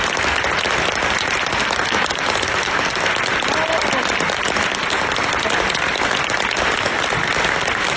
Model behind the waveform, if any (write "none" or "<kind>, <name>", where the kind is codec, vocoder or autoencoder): none